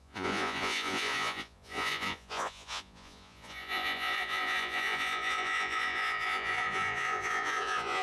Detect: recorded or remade remade